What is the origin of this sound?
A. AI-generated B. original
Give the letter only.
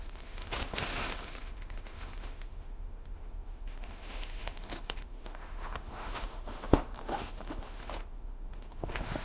A